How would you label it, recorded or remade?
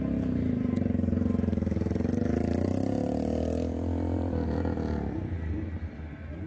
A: recorded